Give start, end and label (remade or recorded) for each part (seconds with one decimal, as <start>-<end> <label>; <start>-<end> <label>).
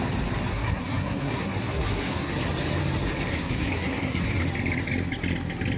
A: 0.0-0.5 recorded; 0.5-2.3 remade; 2.3-3.3 recorded; 3.3-4.4 remade; 4.4-5.8 recorded